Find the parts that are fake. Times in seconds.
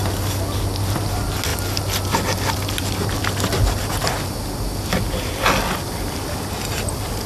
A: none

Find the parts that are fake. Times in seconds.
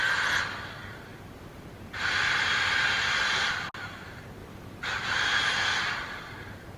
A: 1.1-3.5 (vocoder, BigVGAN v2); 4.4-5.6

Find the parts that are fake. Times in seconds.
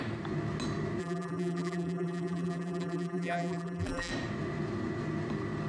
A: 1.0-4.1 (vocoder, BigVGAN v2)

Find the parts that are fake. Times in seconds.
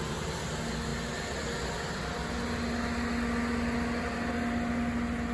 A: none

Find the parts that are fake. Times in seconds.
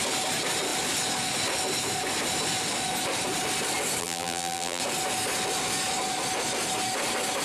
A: 4.0-4.8 (vocoder, BigVGAN v2)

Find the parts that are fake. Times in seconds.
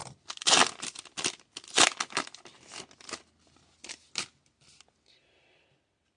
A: none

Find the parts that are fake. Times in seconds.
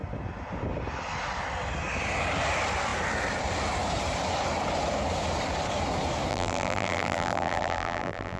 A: 6.3-8.4 (vocoder, BigVGAN v2)